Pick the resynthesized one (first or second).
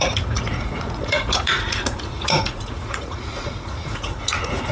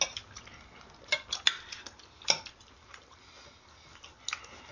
first